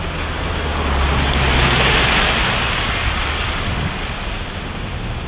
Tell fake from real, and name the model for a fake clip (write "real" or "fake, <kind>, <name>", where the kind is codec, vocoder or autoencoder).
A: real